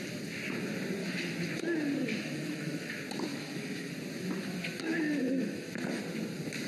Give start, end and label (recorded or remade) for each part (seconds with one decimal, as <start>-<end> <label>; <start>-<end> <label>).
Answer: 0.0-1.0 recorded; 1.0-1.5 remade; 1.5-2.1 recorded; 2.1-2.9 remade; 2.9-3.3 recorded; 3.3-3.9 remade; 3.9-4.9 recorded; 4.9-6.0 remade; 6.0-6.7 recorded